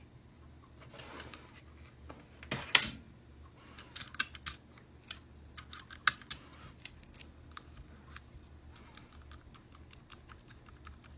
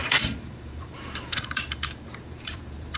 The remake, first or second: second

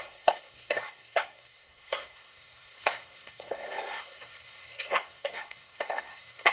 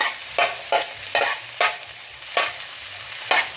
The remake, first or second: first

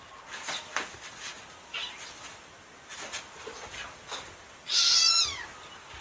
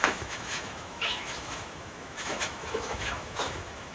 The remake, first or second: second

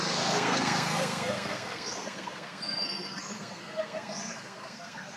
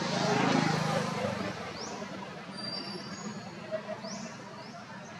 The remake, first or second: first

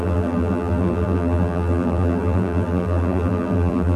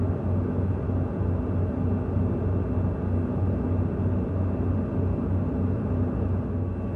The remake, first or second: first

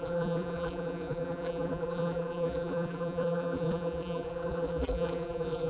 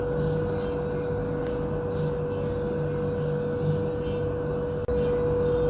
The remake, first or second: first